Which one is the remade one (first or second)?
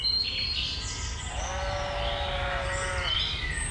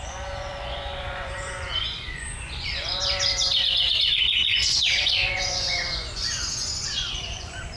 second